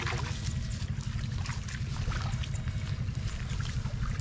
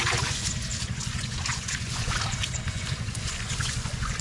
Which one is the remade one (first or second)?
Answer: second